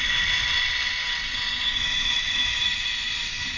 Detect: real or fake real